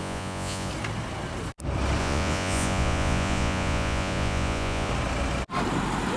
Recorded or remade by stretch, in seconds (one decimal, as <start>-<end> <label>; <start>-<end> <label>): 0.0-0.7 remade; 0.7-2.0 recorded; 2.0-4.9 remade; 4.9-6.2 recorded